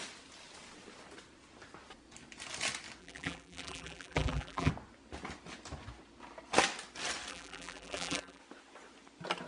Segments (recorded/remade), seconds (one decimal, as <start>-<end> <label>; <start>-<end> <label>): 0.0-3.0 recorded; 3.0-4.7 remade; 4.7-7.3 recorded; 7.3-8.4 remade; 8.4-9.5 recorded